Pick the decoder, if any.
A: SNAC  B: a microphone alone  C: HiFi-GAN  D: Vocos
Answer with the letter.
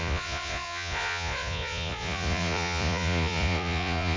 D